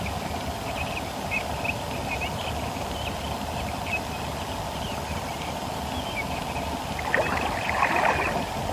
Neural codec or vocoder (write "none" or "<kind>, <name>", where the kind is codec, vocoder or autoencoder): none